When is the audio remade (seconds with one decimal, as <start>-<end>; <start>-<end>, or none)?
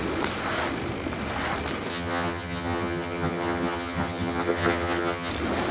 1.9-5.3